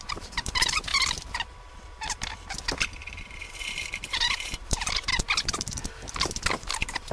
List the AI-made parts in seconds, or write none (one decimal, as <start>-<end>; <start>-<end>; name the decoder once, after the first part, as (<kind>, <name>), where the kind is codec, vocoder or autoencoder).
0.0-0.9 (vocoder, BigVGAN v2); 3.2-5.8; 6.5-7.1